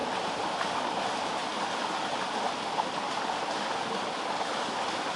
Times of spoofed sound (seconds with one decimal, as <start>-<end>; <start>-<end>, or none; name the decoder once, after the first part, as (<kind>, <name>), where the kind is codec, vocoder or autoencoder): none